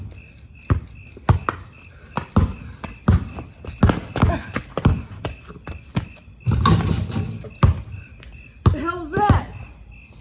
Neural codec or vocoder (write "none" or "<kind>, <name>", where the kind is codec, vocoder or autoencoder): none